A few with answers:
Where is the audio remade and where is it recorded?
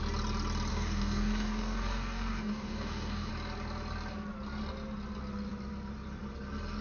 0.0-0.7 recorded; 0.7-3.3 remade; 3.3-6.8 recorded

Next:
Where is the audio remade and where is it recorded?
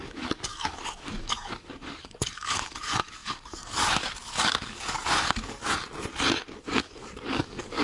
0.0-5.6 remade; 5.6-6.6 recorded; 6.6-7.8 remade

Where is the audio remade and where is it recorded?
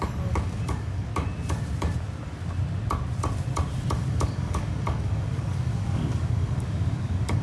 0.0-1.1 remade; 1.1-4.1 recorded; 4.1-7.4 remade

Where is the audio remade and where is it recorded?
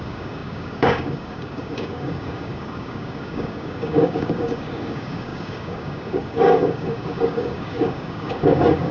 0.0-8.9 remade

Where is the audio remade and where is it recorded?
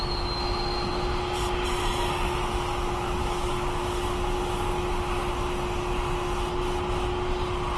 0.0-3.2 recorded; 3.2-3.8 remade; 3.8-7.8 recorded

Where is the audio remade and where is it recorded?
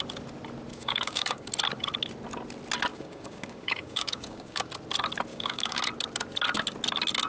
0.0-0.7 recorded; 0.7-1.5 remade; 1.5-2.9 recorded; 2.9-4.7 remade; 4.7-5.3 recorded; 5.3-5.8 remade; 5.8-7.3 recorded